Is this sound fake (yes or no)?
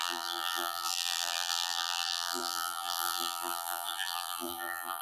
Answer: yes